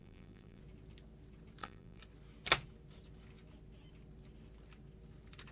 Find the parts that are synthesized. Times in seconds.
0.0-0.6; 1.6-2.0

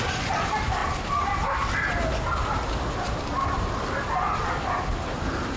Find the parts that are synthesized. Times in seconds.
none

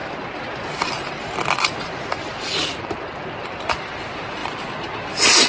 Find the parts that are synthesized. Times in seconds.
none

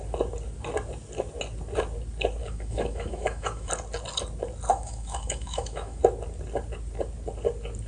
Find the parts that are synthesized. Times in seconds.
2.4-3.7; 4.7-6.0

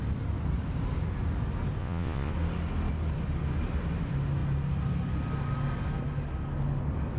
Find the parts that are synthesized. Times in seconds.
1.8-2.3

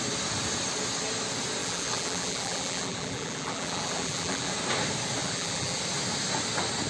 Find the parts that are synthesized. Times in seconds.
1.6-4.5; 5.2-5.8